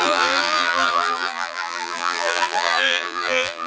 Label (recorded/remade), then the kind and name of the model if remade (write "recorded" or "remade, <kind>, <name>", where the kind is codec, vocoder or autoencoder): remade, vocoder, BigVGAN v2